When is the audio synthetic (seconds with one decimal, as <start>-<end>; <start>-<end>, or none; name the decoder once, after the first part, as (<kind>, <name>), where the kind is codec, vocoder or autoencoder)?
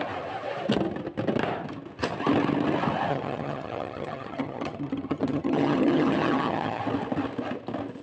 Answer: 3.1-6.8 (vocoder, HiFi-GAN)